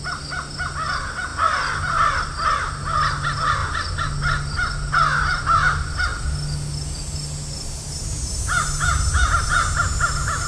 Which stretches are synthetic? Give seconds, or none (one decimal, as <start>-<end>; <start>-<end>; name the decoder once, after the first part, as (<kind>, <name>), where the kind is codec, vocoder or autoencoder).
none